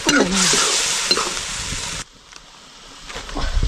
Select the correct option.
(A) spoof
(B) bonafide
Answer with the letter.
B